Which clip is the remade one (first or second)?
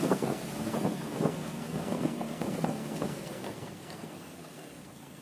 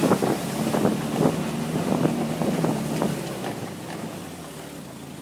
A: first